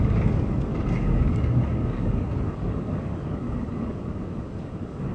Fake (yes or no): yes